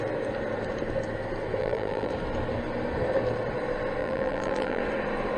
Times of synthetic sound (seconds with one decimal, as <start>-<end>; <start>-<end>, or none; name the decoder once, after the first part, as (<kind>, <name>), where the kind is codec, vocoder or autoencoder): 1.6-2.1 (vocoder, BigVGAN v2); 4.0-4.8